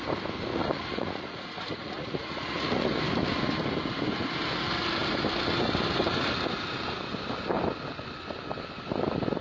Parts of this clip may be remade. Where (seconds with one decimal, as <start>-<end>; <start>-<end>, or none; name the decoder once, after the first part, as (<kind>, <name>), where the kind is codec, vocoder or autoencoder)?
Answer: 0.5-2.9 (vocoder, Vocos)